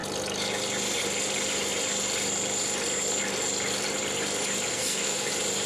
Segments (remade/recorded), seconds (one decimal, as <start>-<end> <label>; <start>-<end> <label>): 0.0-4.7 recorded; 4.7-5.3 remade; 5.3-5.7 recorded